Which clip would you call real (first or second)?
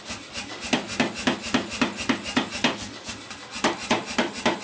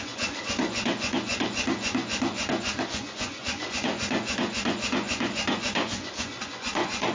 first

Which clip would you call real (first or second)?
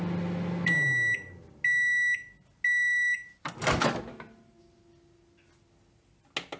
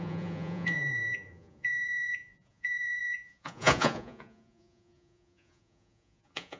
first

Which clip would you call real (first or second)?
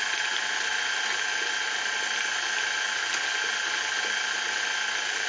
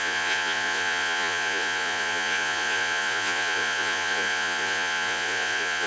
first